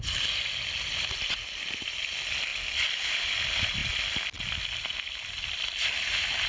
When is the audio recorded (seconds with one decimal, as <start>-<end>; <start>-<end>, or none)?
0.0-6.5